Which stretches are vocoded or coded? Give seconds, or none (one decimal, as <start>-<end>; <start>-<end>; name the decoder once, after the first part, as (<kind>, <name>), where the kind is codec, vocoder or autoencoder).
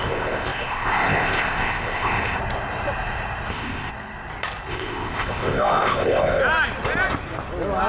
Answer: 0.0-2.4 (codec, ZipCodec); 3.5-3.9; 4.7-6.4